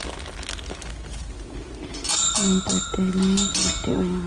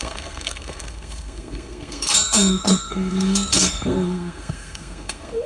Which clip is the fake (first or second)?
second